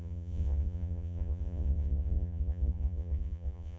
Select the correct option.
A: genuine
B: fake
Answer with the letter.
B